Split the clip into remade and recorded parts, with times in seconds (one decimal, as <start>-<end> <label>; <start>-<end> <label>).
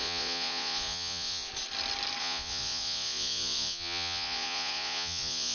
0.0-1.5 remade; 1.5-2.2 recorded; 2.2-5.5 remade